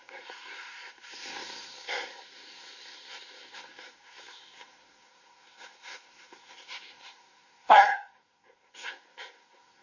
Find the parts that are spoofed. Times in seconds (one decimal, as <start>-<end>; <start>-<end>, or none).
0.0-9.8